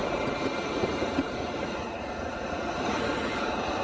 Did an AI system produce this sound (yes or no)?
yes